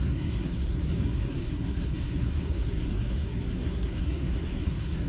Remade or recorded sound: remade